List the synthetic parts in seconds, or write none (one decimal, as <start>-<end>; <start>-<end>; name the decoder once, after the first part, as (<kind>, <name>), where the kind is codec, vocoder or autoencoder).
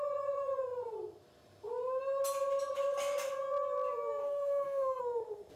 4.2-5.0 (codec, DAC)